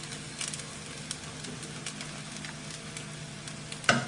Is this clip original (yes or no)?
yes